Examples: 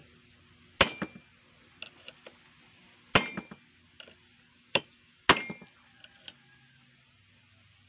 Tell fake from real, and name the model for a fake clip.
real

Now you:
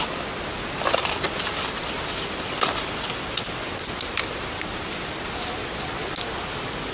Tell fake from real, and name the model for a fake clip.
real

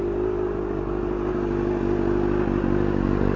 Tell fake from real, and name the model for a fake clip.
real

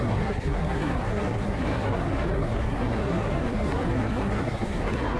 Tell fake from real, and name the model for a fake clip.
fake, codec, SNAC